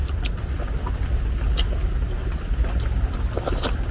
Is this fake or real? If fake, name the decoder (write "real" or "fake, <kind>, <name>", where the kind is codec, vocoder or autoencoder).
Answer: real